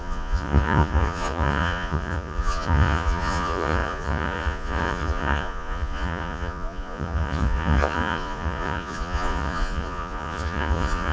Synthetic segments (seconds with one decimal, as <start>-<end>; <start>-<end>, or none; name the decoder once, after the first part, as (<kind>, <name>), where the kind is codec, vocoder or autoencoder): 0.0-11.1 (vocoder, Vocos)